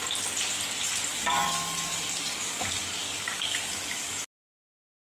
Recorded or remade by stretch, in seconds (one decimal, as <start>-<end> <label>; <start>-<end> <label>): 0.0-1.1 recorded; 1.1-4.1 remade; 4.1-5.0 recorded